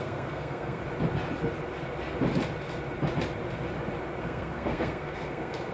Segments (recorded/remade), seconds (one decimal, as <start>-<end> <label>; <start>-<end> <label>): 0.0-0.8 remade; 0.8-4.2 recorded; 4.2-5.7 remade